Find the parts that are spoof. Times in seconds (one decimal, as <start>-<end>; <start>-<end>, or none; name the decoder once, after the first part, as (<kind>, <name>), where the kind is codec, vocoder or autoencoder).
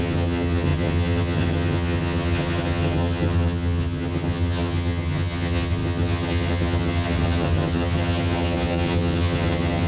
0.0-9.9 (vocoder, HiFi-GAN)